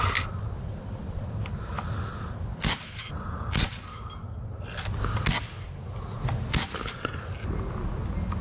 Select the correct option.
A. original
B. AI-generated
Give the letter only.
A